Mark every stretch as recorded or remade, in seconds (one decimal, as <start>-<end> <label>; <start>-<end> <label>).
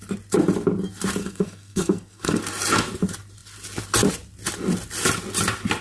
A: 0.0-1.2 recorded; 1.2-2.4 remade; 2.4-5.8 recorded